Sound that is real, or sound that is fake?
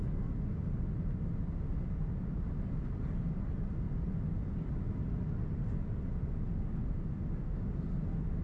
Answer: real